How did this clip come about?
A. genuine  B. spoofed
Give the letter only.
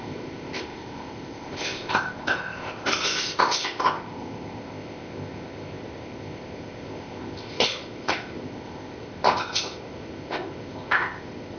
B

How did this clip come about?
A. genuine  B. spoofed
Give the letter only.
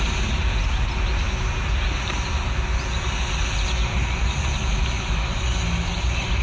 A